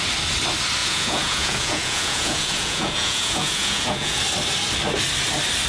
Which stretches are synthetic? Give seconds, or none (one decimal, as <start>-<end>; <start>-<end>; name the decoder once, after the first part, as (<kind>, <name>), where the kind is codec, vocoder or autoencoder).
0.8-4.2 (vocoder, Vocos)